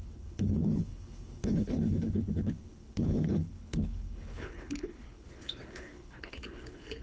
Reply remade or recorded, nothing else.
remade